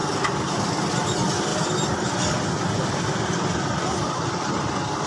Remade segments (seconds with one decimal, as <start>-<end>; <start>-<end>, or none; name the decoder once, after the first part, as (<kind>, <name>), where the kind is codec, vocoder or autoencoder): 1.5-4.6 (vocoder, BigVGAN v2)